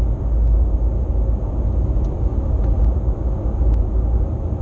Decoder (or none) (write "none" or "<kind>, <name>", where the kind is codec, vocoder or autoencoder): none